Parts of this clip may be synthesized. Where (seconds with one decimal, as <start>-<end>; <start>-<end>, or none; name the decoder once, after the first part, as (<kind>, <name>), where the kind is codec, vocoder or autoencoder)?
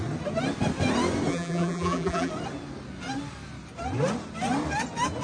1.3-2.3 (vocoder, BigVGAN v2)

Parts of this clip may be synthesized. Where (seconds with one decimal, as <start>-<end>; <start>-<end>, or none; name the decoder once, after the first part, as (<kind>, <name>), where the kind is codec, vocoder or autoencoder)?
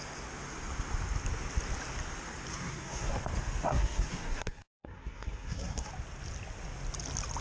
2.5-3.1 (codec, SNAC); 3.7-5.9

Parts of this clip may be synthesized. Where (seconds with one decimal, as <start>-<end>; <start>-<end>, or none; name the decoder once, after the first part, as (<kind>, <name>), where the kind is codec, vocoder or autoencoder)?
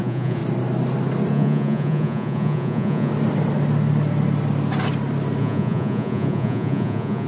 0.0-0.4 (vocoder, Vocos); 1.3-3.1; 5.4-7.3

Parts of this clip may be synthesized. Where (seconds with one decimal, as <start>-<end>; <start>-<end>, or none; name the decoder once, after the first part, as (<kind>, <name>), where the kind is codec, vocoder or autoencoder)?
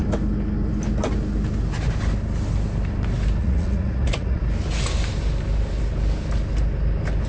3.4-4.4 (vocoder, Vocos)